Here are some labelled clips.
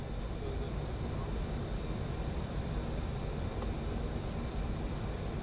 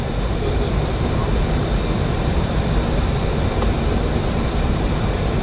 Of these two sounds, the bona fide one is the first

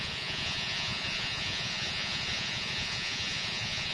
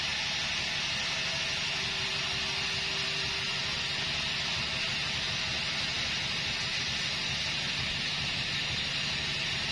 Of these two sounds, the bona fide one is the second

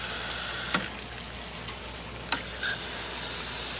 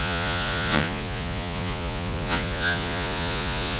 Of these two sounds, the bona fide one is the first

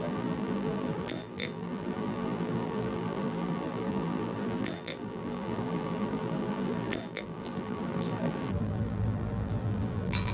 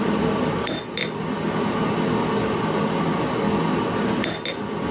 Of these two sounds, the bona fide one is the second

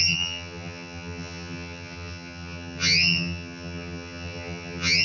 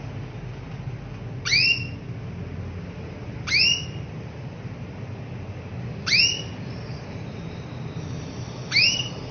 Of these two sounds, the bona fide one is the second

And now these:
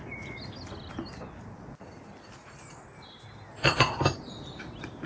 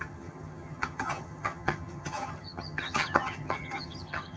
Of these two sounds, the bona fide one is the first